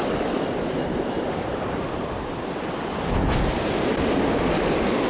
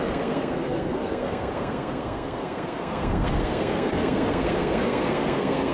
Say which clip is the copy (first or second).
second